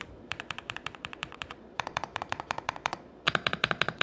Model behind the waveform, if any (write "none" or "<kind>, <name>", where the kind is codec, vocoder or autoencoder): vocoder, Vocos